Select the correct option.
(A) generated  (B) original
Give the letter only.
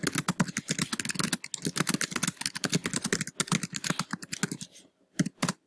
B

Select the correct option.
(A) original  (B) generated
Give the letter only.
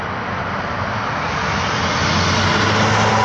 A